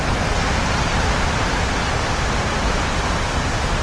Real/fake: real